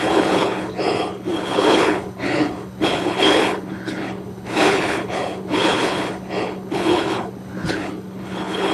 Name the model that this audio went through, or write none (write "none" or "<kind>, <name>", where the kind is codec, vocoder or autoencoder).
codec, HILCodec